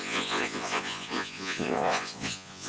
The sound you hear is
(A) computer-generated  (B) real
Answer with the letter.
A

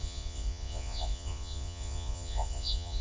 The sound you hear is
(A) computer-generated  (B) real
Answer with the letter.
A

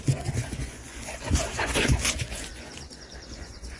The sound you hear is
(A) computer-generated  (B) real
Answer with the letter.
A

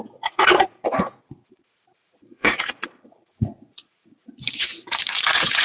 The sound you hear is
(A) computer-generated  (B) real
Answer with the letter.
A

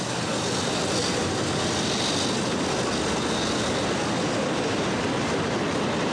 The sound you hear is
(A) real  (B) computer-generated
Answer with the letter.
A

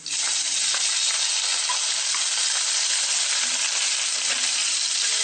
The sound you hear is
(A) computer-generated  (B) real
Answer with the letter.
B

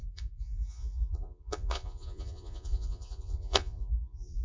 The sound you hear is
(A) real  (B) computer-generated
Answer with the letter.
B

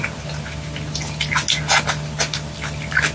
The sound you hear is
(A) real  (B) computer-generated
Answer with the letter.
A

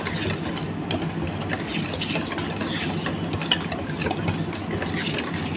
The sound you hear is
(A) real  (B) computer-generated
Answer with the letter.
A